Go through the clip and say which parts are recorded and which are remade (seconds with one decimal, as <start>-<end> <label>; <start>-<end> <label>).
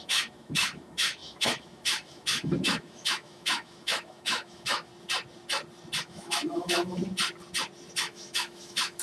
0.0-4.9 remade; 4.9-6.0 recorded; 6.0-7.0 remade; 7.0-8.0 recorded; 8.0-9.0 remade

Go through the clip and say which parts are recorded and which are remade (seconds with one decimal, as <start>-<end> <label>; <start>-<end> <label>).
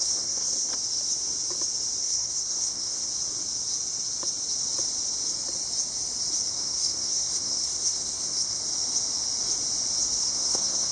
0.0-0.7 remade; 0.7-2.0 recorded; 2.0-3.1 remade; 3.1-6.5 recorded; 6.5-8.6 remade; 8.6-10.2 recorded; 10.2-10.9 remade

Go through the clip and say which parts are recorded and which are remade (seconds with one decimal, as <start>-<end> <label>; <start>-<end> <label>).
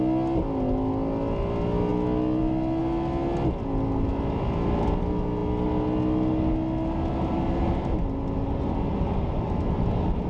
0.0-10.3 recorded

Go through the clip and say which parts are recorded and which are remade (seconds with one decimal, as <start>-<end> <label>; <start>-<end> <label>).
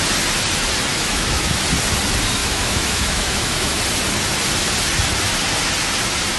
0.0-0.9 recorded; 0.9-1.6 remade; 1.6-2.4 recorded; 2.4-3.8 remade; 3.8-6.4 recorded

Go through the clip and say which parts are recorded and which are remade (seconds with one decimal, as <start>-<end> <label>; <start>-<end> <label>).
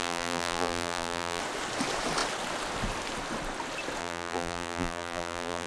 0.0-1.4 remade; 1.4-4.0 recorded; 4.0-5.7 remade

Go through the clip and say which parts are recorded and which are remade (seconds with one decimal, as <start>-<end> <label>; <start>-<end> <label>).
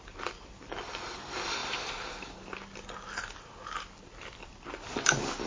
0.0-1.6 remade; 1.6-4.1 recorded; 4.1-5.5 remade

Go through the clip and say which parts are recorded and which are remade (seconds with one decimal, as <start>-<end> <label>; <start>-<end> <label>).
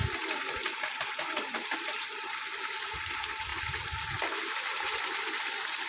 0.0-5.9 recorded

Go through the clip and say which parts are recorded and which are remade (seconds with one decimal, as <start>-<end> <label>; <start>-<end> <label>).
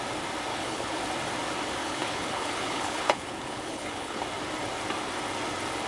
0.0-0.5 recorded; 0.5-1.0 remade; 1.0-1.8 recorded; 1.8-4.2 remade; 4.2-5.9 recorded